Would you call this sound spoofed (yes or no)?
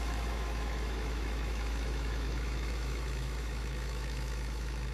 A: yes